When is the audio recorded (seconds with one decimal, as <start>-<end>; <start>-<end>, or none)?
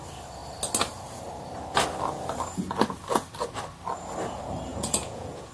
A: 0.0-4.7